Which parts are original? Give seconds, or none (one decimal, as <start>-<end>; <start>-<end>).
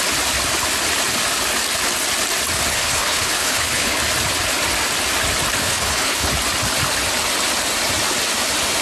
0.0-2.7; 4.0-5.6; 6.3-8.8